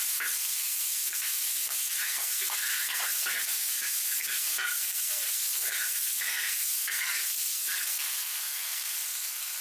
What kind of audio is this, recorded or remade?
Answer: remade